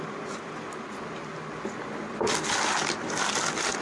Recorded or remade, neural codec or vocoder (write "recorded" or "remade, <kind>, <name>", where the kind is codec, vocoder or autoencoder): recorded